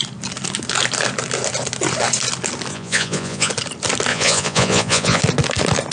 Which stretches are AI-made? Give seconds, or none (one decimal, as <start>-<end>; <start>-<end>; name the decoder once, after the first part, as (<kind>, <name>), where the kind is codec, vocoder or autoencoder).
2.7-3.5 (vocoder, Vocos); 4.1-5.2